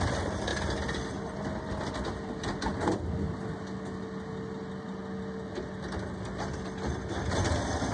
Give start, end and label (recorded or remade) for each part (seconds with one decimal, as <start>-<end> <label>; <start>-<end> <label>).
0.0-7.9 recorded